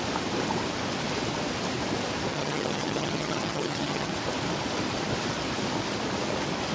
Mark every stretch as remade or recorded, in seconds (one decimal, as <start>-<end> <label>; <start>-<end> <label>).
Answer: 0.0-2.3 recorded; 2.3-4.1 remade; 4.1-6.7 recorded